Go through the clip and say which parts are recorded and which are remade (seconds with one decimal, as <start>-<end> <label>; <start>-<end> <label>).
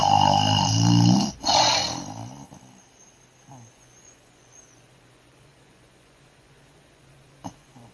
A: 0.0-1.3 recorded; 1.3-1.8 remade; 1.8-3.7 recorded; 3.7-7.9 remade